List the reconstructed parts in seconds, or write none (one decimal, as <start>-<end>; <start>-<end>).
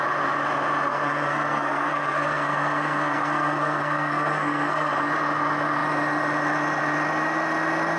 0.9-4.9